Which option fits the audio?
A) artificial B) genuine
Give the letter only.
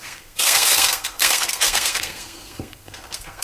A